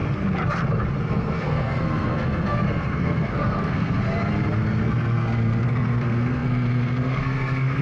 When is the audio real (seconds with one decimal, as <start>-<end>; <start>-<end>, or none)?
0.0-1.1; 4.0-4.8